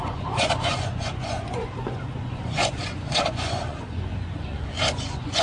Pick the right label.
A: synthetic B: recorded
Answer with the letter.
A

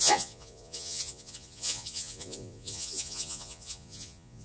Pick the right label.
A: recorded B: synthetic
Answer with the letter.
B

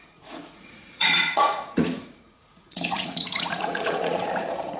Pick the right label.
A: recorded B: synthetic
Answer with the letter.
B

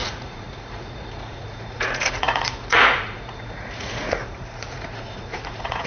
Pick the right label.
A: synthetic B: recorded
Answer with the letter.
A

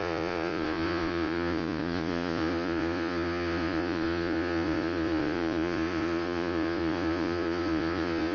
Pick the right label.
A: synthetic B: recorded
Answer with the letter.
A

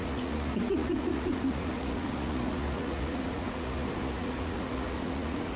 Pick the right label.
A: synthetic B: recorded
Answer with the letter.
A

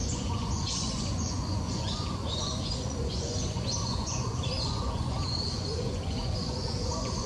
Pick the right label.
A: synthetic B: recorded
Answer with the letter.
A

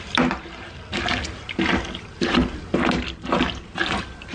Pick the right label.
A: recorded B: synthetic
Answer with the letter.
A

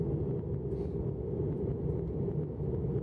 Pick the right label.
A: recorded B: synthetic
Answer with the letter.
A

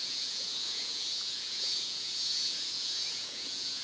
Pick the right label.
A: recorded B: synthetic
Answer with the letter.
B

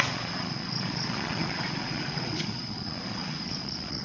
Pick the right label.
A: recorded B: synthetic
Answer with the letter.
B